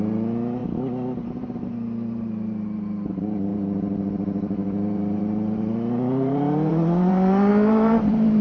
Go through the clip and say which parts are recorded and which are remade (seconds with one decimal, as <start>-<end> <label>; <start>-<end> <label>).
0.0-0.6 remade; 0.6-1.3 recorded; 1.3-8.4 remade